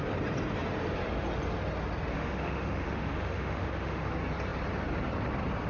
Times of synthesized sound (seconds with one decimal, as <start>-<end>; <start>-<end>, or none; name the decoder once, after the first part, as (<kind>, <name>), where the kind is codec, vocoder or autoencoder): 2.1-4.1 (autoencoder, DAC-VAE)